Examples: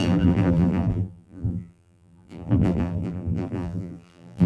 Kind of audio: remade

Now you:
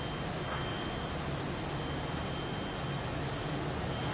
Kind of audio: recorded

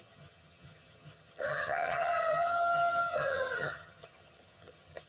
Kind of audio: remade